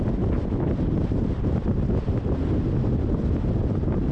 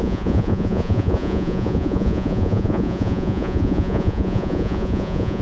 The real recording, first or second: first